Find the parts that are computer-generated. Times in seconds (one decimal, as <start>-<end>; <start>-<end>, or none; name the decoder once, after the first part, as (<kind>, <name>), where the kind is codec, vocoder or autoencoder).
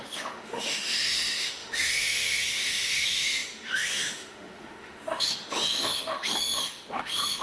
0.0-7.4 (autoencoder, DAC-VAE)